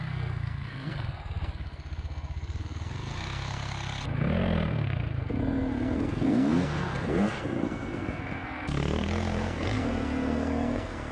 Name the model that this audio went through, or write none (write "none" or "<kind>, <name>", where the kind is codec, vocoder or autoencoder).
codec, SNAC